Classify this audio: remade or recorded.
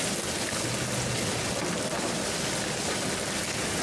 recorded